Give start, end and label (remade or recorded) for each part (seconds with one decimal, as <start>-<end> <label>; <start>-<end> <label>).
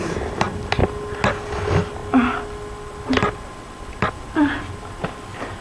0.0-5.6 recorded